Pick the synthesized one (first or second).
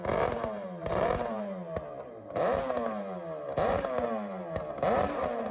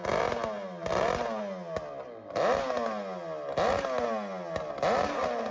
first